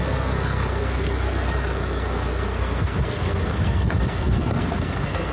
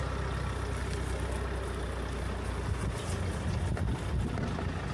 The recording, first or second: second